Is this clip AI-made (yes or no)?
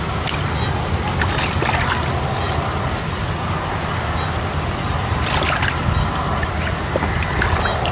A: no